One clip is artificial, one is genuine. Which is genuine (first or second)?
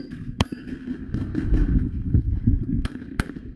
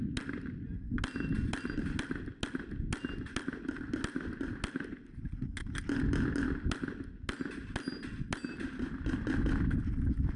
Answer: second